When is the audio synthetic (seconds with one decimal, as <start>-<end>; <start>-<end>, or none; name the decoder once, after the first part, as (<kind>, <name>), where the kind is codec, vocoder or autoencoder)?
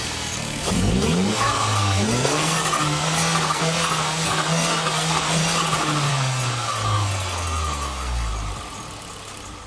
0.0-5.4 (codec, SNAC); 6.1-8.3